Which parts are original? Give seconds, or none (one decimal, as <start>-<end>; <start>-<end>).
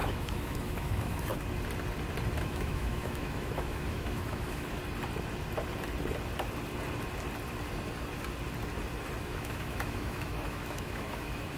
1.3-2.4; 4.8-9.2